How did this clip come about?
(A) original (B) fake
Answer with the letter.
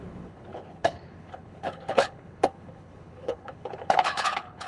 B